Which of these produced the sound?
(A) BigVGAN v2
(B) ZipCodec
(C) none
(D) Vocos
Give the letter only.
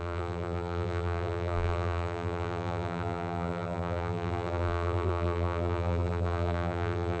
A